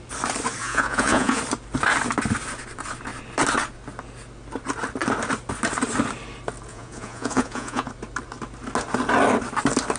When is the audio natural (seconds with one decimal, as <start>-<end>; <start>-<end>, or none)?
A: 0.0-0.6; 1.4-6.7; 7.9-10.0